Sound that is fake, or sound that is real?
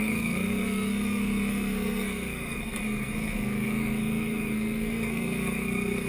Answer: fake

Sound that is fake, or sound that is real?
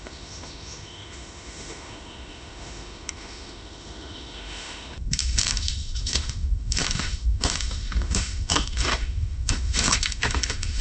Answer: fake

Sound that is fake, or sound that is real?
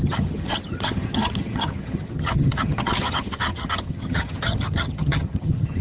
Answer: fake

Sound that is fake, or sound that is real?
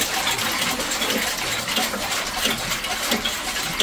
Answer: real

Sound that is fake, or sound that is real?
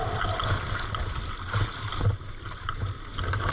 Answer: real